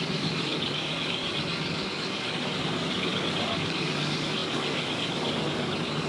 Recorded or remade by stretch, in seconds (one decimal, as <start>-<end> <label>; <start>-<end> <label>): 0.0-6.1 remade